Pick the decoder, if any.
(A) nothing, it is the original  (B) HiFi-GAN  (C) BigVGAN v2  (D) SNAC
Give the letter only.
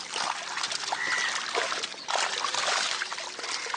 A